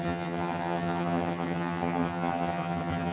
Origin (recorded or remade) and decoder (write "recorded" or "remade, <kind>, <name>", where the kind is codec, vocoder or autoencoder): remade, vocoder, HiFi-GAN